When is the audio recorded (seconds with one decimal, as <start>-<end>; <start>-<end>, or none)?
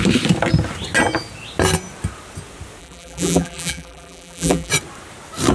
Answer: 0.0-2.8; 4.7-5.5